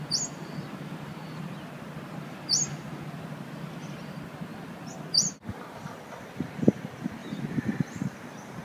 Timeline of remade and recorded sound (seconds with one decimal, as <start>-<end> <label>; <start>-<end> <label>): 0.0-7.2 recorded; 7.2-8.6 remade

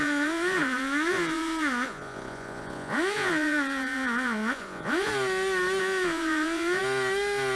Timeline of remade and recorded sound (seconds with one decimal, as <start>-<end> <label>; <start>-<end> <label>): 0.0-5.1 remade; 5.1-5.8 recorded; 5.8-6.8 remade; 6.8-7.6 recorded

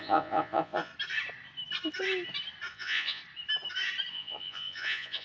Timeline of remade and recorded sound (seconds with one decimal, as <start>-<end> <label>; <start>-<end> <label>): 0.0-0.9 remade; 0.9-2.7 recorded; 2.7-3.2 remade; 3.2-4.1 recorded; 4.1-5.2 remade

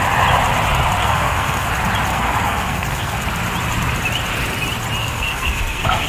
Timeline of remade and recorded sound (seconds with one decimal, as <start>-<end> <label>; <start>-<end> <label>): 0.0-1.0 recorded; 1.0-1.7 remade; 1.7-2.1 recorded; 2.1-3.2 remade; 3.2-5.0 recorded; 5.0-6.1 remade